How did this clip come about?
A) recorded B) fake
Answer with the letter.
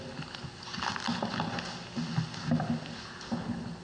A